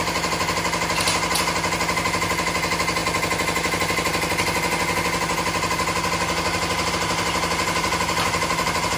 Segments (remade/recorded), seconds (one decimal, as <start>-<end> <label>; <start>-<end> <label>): 0.0-9.0 recorded